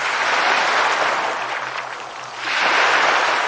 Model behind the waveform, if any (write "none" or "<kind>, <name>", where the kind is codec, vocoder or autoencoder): none